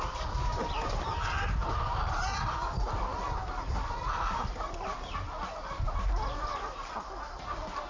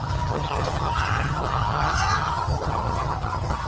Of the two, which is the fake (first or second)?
second